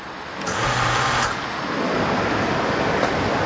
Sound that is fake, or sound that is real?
real